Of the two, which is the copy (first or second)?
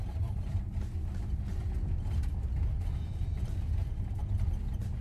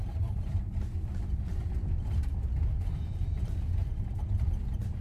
second